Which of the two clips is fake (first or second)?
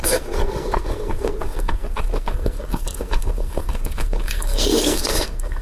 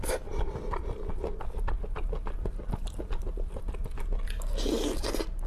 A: first